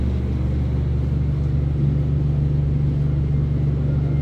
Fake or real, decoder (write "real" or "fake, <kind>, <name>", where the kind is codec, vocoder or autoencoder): real